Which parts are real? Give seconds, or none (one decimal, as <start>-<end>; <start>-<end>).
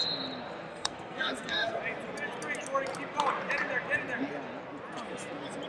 0.0-0.7; 1.8-5.7